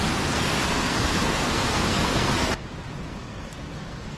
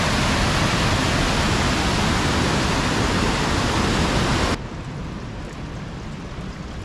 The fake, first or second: first